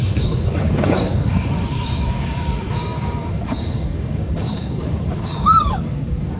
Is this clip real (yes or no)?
no